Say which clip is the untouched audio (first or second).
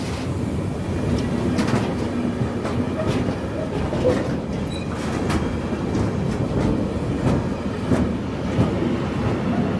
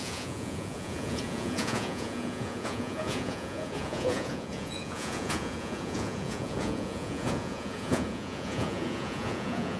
first